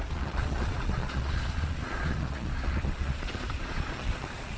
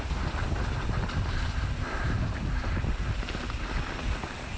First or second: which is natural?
second